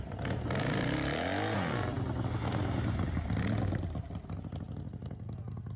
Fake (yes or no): no